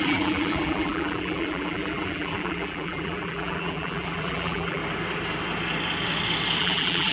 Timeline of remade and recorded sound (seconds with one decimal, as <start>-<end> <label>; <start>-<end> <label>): 0.0-4.8 remade; 4.8-6.6 recorded; 6.6-7.1 remade